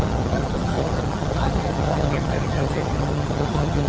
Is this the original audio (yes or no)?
no